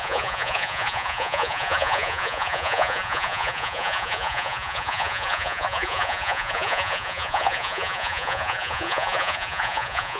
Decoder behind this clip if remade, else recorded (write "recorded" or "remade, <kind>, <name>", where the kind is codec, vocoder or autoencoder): remade, vocoder, Vocos